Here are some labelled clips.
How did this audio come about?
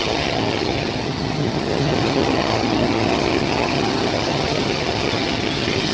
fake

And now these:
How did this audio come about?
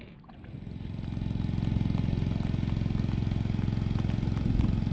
real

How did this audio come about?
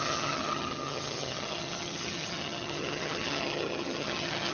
fake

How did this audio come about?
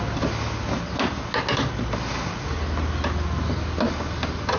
real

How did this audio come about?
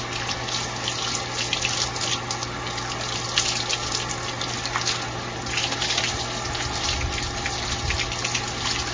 real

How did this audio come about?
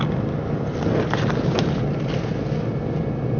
real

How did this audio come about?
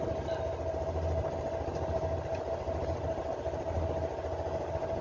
real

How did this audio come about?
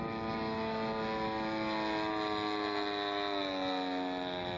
real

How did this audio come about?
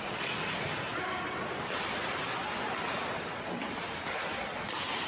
real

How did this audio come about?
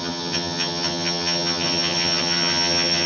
fake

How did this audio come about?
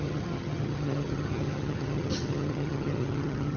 fake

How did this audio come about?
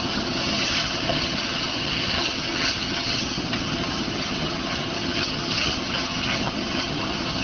fake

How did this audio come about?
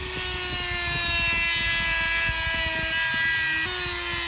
real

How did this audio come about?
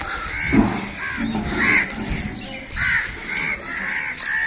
real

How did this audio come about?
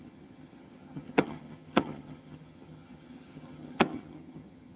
fake